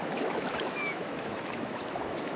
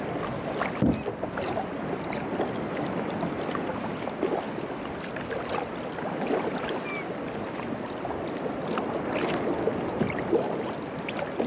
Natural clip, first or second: second